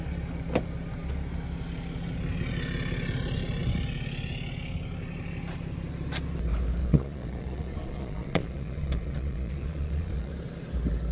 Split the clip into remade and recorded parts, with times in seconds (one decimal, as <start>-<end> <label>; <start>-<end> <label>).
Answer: 0.0-6.8 recorded; 6.8-10.3 remade; 10.3-11.1 recorded